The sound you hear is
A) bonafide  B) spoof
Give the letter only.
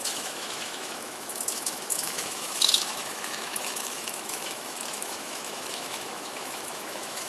B